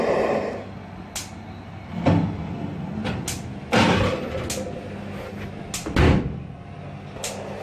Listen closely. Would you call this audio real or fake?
real